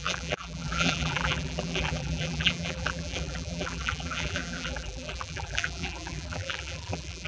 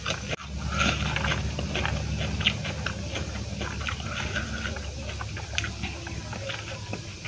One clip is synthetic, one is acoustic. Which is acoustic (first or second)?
second